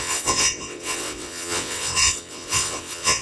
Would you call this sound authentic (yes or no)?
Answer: no